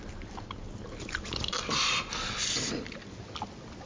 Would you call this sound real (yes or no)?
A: yes